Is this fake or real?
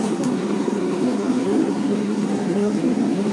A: fake